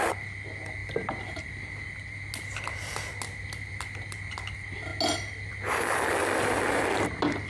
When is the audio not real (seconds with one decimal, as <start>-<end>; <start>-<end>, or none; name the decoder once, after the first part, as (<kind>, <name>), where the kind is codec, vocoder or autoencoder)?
none